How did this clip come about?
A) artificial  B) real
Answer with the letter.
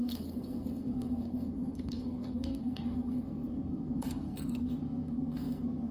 A